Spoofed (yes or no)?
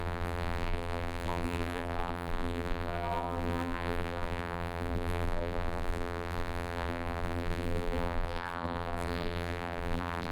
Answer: yes